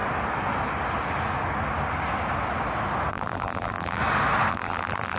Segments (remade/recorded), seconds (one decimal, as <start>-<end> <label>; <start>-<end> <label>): 0.0-3.1 recorded; 3.1-4.0 remade; 4.0-4.5 recorded; 4.5-5.2 remade